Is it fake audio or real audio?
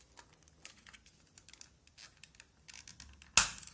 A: real